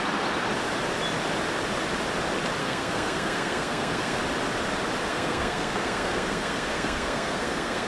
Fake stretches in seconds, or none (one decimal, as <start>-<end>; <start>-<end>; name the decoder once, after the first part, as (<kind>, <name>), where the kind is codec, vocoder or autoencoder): 2.6-4.2 (codec, SNAC); 5.1-7.9